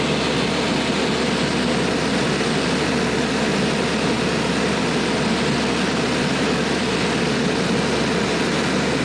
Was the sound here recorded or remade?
recorded